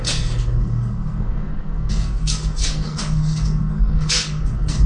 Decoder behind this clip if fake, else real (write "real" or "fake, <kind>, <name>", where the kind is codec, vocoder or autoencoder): fake, codec, SNAC